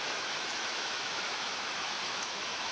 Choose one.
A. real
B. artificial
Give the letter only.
B